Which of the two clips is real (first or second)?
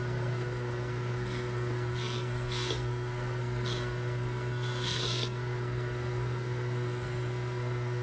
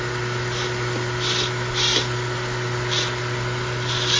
second